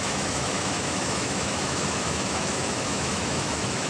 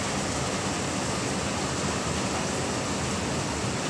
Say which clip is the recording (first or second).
second